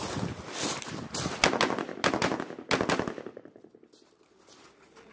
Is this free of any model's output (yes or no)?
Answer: yes